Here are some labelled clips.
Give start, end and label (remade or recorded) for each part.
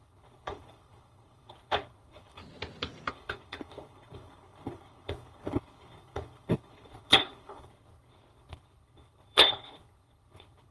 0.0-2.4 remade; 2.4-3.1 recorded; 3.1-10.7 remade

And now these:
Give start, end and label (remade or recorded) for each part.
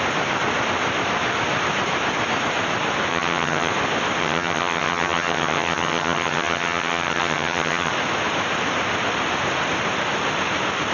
0.0-3.1 recorded; 3.1-3.7 remade; 3.7-4.2 recorded; 4.2-7.9 remade; 7.9-10.9 recorded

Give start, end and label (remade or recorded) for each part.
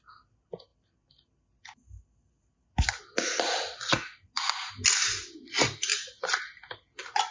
0.0-7.3 recorded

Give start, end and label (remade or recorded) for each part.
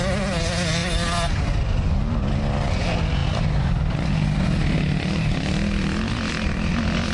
0.0-7.1 recorded